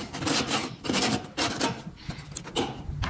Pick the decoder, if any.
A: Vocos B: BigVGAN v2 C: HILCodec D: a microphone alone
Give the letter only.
D